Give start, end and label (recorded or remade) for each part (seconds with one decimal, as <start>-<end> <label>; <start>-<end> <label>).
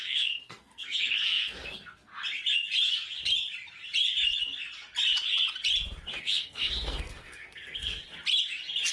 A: 0.0-2.1 remade; 2.1-6.2 recorded; 6.2-8.0 remade; 8.0-8.9 recorded